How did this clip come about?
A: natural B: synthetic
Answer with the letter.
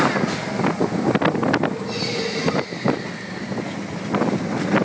A